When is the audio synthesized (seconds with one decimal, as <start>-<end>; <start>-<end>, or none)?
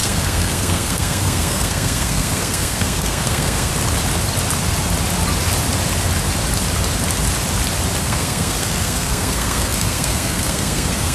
0.0-3.7; 8.0-11.1